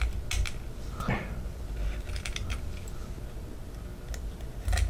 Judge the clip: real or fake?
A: real